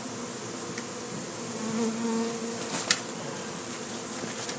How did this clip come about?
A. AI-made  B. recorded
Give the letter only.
B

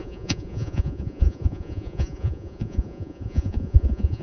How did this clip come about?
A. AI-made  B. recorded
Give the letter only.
A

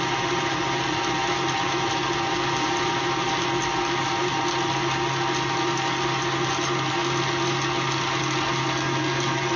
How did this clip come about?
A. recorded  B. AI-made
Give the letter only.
A